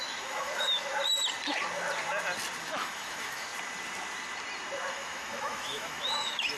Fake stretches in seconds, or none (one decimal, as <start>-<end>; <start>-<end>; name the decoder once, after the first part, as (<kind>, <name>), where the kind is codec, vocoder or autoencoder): 0.0-0.9 (autoencoder, DAC-VAE); 2.6-3.5; 4.9-6.6